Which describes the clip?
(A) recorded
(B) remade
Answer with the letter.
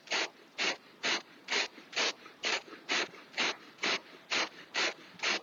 B